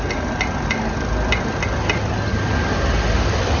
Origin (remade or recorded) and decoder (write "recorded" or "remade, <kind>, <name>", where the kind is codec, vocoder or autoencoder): recorded